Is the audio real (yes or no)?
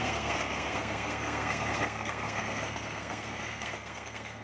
no